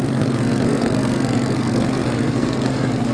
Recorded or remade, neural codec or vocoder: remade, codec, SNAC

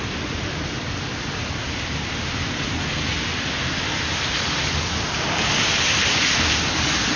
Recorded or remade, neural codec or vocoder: recorded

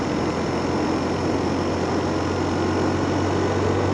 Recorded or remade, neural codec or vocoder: recorded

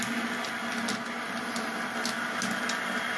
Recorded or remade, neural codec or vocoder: recorded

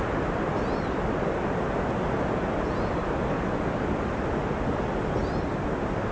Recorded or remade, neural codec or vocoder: recorded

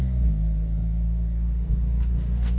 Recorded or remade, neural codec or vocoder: remade, codec, SNAC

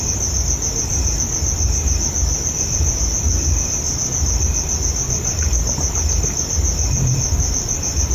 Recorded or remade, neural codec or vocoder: recorded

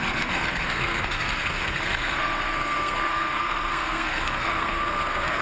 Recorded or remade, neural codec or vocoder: remade, codec, SNAC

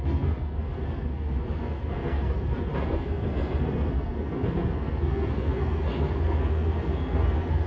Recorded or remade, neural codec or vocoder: remade, codec, SNAC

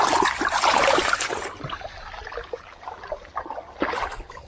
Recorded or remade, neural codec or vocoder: recorded